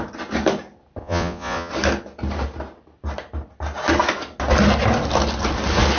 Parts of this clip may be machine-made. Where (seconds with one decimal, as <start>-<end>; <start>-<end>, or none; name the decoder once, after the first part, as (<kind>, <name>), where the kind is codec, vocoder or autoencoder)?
1.0-1.7 (vocoder, Vocos)